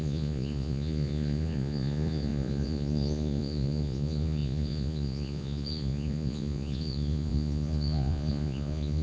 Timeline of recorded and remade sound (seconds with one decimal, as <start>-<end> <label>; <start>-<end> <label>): 0.0-9.0 remade